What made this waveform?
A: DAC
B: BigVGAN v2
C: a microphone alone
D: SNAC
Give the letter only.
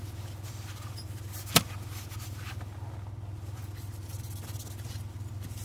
C